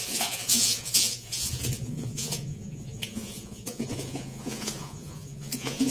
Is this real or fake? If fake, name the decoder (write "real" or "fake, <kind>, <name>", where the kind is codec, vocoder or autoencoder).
fake, vocoder, Vocos